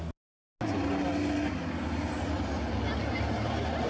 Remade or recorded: recorded